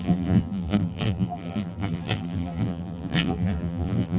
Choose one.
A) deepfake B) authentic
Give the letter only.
A